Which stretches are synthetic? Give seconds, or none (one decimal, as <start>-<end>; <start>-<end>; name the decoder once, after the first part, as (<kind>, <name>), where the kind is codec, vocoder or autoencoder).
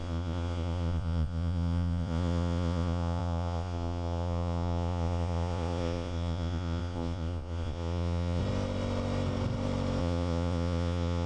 0.0-8.4 (vocoder, Vocos); 10.0-11.3